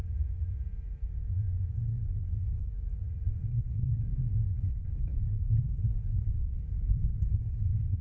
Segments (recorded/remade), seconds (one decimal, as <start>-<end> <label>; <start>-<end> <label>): 0.0-1.9 recorded; 1.9-2.7 remade; 2.7-3.5 recorded; 3.5-4.0 remade; 4.0-4.5 recorded; 4.5-8.0 remade